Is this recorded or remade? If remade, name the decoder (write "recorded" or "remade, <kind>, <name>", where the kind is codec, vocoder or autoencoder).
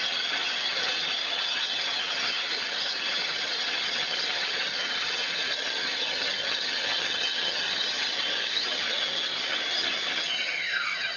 remade, vocoder, HiFi-GAN